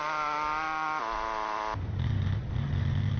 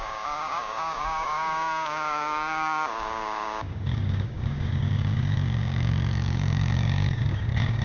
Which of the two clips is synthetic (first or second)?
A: second